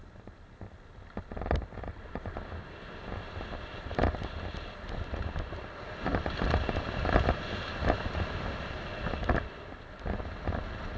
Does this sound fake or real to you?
real